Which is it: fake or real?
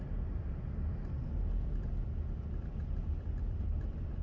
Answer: real